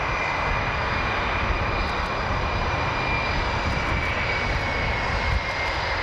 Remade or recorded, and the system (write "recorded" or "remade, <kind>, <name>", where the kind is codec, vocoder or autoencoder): recorded